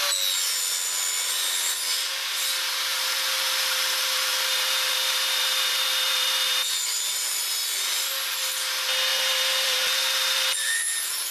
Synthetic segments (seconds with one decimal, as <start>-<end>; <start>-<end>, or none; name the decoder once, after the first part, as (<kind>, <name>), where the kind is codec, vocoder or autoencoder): 2.9-7.4 (vocoder, BigVGAN v2); 9.1-11.3